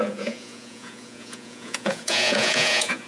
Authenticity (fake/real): fake